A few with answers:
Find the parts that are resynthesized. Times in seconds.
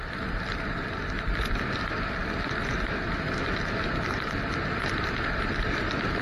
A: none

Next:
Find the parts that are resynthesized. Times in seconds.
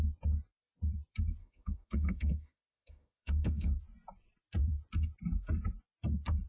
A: 1.4-3.8 (autoencoder, DAC-VAE)